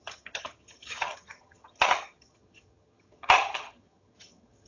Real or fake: fake